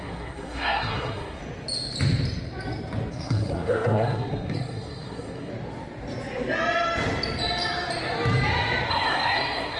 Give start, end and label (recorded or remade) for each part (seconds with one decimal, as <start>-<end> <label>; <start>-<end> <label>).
0.0-1.4 remade; 1.4-3.1 recorded; 3.1-5.5 remade; 5.5-8.9 recorded; 8.9-9.8 remade